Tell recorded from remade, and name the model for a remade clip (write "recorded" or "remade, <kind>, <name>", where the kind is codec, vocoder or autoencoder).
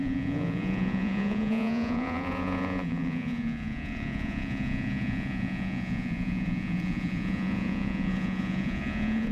remade, vocoder, Vocos